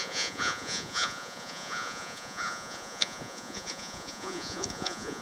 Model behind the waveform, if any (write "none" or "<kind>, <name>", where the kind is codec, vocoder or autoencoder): vocoder, Vocos